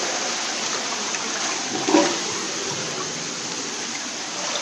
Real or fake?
real